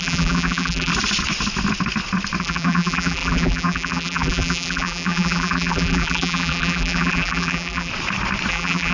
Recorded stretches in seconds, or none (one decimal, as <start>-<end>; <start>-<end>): 0.9-2.4; 7.9-8.5